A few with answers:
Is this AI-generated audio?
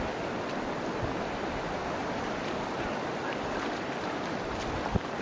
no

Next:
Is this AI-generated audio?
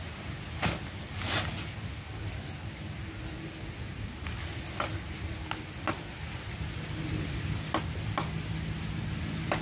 no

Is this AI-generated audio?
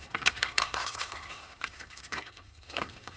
yes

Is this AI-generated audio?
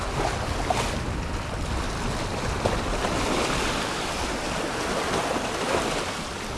no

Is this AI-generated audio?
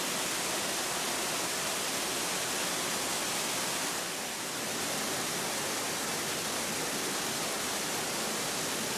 no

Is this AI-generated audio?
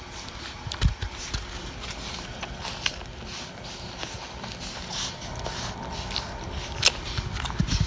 no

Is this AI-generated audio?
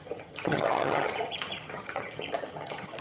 yes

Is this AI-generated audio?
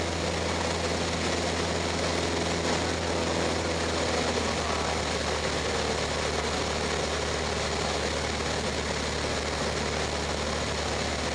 no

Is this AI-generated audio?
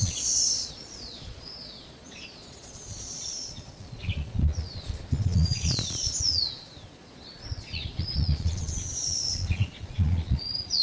yes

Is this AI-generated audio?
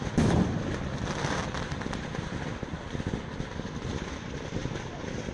yes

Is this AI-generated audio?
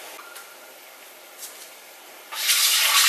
no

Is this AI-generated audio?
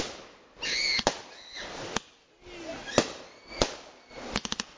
no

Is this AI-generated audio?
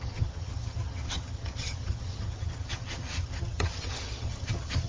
yes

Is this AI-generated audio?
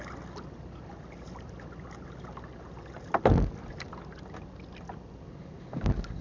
no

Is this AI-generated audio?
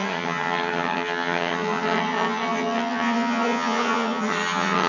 yes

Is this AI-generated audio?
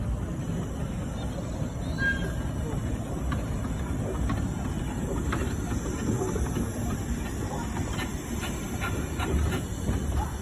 no